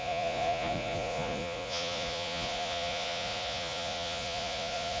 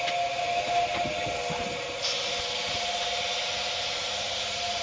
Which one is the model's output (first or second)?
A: first